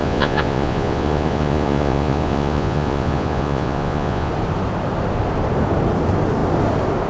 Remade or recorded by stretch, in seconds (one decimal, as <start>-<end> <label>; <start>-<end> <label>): 0.0-4.3 remade; 4.3-7.1 recorded